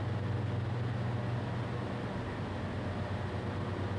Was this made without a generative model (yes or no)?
yes